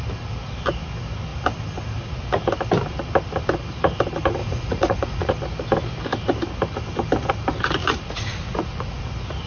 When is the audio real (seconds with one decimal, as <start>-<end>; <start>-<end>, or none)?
0.0-4.4; 5.3-7.8; 9.0-9.5

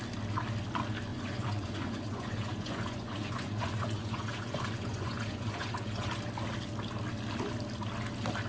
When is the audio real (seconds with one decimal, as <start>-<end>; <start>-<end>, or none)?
0.0-1.1; 6.1-8.5